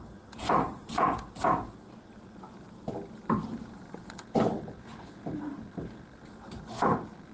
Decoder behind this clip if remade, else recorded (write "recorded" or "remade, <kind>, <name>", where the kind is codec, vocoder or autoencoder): recorded